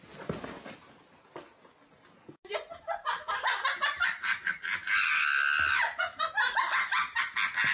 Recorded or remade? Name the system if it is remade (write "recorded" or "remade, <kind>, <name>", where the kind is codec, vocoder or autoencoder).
recorded